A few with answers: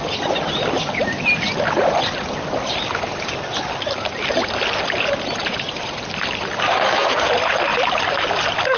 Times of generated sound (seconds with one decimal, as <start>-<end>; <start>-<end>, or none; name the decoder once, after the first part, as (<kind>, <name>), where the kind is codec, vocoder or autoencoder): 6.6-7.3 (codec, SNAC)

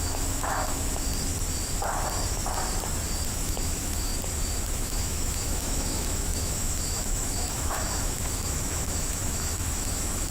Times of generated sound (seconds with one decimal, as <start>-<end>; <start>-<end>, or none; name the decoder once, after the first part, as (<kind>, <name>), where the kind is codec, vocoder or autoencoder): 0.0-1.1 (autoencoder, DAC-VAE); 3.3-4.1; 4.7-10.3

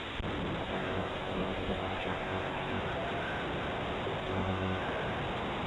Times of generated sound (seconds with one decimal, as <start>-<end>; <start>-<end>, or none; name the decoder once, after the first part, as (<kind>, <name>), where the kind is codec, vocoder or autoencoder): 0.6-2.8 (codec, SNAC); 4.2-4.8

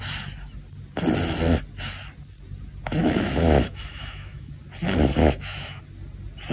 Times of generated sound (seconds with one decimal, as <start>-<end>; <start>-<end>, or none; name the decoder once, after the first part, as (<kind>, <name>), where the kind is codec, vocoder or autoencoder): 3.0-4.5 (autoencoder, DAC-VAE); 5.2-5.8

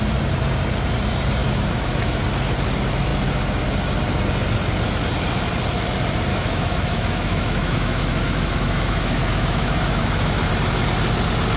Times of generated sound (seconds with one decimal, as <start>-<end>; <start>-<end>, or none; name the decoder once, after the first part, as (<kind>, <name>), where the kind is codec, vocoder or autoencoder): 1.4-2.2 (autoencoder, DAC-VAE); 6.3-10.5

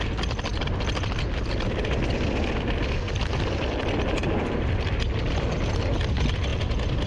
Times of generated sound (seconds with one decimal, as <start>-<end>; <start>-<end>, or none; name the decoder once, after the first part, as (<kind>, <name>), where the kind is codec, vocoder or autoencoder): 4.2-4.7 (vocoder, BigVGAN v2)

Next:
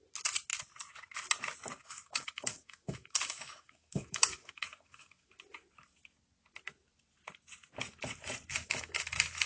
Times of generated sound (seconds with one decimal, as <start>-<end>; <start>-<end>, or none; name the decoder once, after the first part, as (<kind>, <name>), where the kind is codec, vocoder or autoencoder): 1.8-5.3 (autoencoder, DAC-VAE); 8.5-9.1